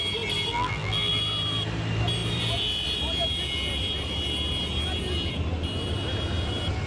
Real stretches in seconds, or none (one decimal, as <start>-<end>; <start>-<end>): 0.0-0.5; 1.2-6.9